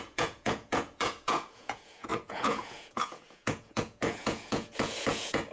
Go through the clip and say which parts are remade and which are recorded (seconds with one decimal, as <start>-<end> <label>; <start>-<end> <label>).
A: 0.0-5.5 remade